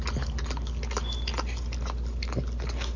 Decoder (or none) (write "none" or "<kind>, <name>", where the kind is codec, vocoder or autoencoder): none